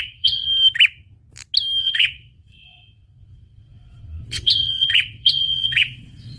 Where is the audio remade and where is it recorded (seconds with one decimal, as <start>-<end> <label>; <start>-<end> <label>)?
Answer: 0.0-0.5 remade; 0.5-1.8 recorded; 1.8-6.4 remade

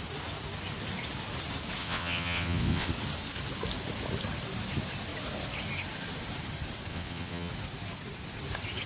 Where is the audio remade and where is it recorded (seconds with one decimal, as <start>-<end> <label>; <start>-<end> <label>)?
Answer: 0.0-1.8 recorded; 1.8-2.9 remade; 2.9-6.9 recorded; 6.9-7.5 remade; 7.5-8.9 recorded

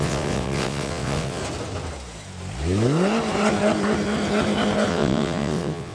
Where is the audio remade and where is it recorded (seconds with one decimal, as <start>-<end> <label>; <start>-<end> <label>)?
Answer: 0.0-1.4 remade; 1.4-4.9 recorded; 4.9-5.9 remade

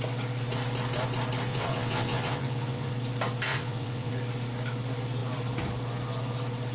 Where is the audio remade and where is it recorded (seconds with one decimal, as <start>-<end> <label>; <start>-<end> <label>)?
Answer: 0.0-1.5 recorded; 1.5-2.9 remade; 2.9-3.5 recorded; 3.5-4.1 remade; 4.1-6.7 recorded

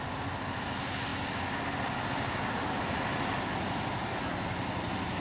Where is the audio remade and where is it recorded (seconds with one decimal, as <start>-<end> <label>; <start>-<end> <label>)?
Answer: 0.0-5.2 recorded